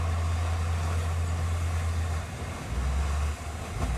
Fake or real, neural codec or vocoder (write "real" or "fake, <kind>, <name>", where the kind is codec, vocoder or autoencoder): real